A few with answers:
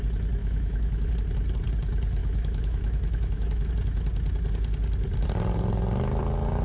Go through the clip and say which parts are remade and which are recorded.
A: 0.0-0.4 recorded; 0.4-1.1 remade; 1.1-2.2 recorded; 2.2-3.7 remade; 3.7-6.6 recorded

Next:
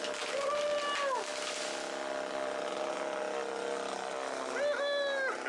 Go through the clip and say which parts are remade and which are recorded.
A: 0.0-5.5 recorded

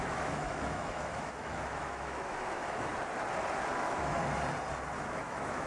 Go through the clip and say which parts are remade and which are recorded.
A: 0.0-2.9 remade; 2.9-3.7 recorded; 3.7-4.2 remade; 4.2-5.0 recorded; 5.0-5.7 remade

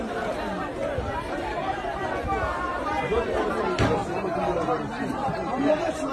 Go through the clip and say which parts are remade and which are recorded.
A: 0.0-0.7 recorded; 0.7-2.0 remade; 2.0-2.7 recorded; 2.7-3.5 remade; 3.5-4.0 recorded; 4.0-6.1 remade

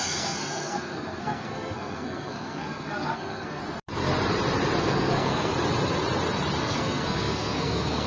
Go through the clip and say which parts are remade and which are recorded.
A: 0.0-3.6 remade; 3.6-4.8 recorded; 4.8-5.5 remade; 5.5-6.6 recorded; 6.6-8.1 remade

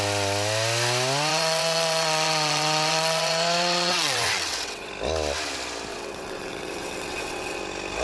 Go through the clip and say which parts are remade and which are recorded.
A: 0.0-1.3 recorded; 1.3-4.9 remade; 4.9-5.9 recorded; 5.9-7.6 remade; 7.6-8.0 recorded

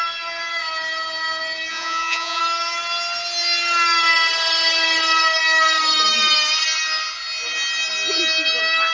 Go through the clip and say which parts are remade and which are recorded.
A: 0.0-1.7 recorded; 1.7-2.4 remade; 2.4-8.9 recorded